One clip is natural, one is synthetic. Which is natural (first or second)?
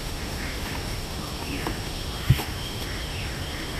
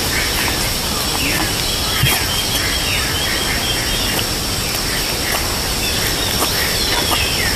second